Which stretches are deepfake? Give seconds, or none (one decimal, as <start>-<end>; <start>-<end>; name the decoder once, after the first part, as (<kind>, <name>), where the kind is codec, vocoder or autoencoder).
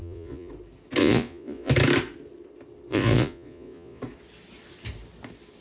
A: 0.0-0.5 (vocoder, Vocos); 1.0-1.7; 2.9-4.0